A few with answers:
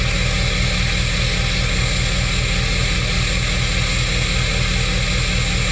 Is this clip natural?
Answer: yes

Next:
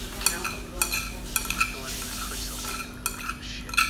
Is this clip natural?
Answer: yes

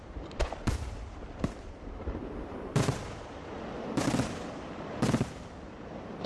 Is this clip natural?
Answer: no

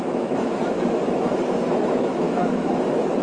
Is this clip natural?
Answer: no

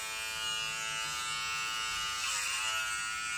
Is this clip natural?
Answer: yes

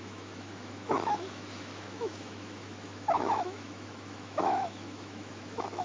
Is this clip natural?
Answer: no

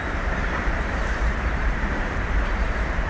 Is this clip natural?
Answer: no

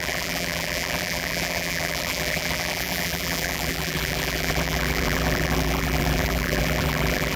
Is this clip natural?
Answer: no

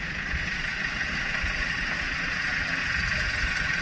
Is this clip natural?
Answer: no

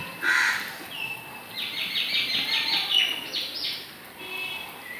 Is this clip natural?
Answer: yes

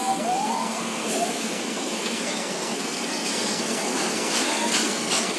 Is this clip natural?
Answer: no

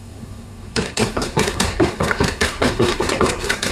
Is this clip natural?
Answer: no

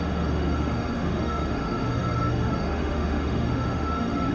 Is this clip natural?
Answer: no